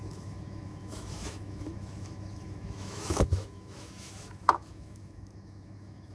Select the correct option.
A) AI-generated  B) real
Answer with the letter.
A